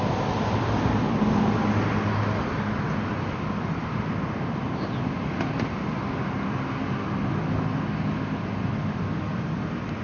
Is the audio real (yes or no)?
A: yes